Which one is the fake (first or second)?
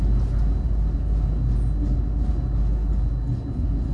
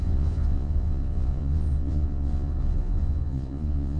second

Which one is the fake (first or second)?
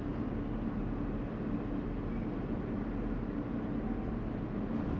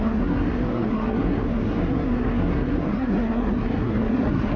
second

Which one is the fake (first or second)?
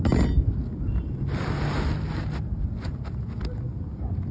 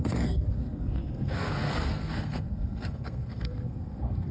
second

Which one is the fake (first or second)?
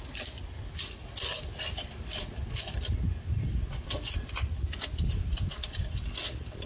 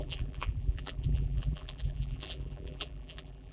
second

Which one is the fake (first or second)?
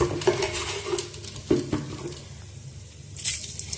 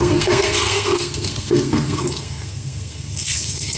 second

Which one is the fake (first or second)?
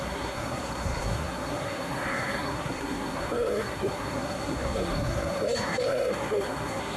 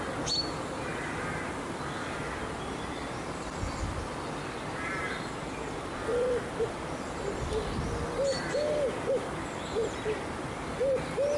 first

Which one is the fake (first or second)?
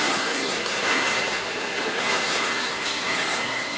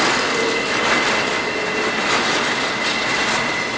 first